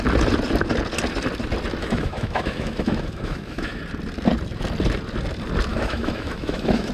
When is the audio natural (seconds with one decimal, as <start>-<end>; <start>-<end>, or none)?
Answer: 0.0-1.8; 3.8-5.7